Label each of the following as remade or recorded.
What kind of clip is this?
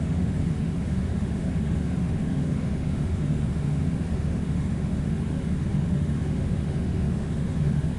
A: remade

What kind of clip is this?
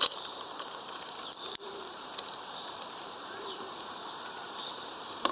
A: remade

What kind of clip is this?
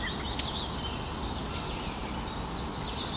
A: recorded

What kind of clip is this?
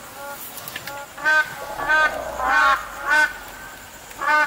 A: recorded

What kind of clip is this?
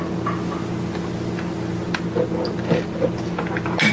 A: recorded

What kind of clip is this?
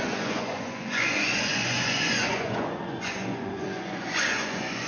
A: remade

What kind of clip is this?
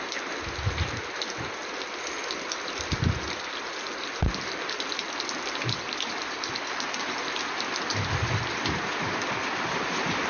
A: recorded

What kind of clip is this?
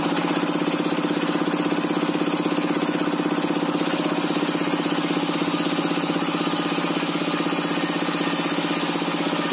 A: recorded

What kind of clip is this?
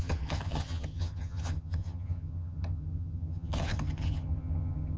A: remade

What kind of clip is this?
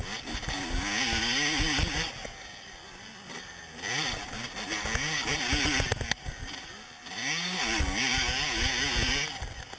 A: recorded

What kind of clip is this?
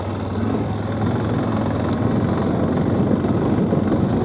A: recorded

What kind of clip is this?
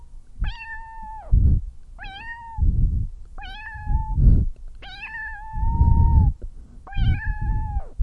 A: recorded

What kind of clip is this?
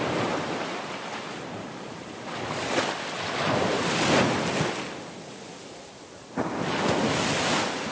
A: recorded